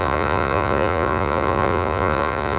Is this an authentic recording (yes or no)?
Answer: no